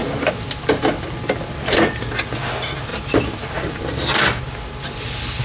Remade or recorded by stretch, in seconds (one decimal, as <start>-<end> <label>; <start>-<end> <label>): 0.0-0.5 remade; 0.5-2.9 recorded; 2.9-4.4 remade; 4.4-5.4 recorded